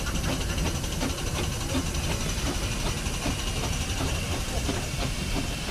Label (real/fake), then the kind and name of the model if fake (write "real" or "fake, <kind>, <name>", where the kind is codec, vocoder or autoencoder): real